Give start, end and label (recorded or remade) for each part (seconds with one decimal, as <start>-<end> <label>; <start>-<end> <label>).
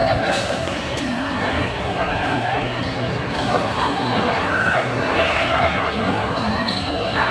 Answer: 0.0-7.3 remade